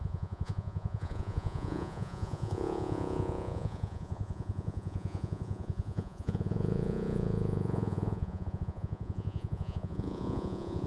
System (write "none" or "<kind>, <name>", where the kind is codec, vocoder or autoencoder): vocoder, Vocos